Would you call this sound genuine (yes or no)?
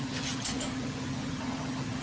no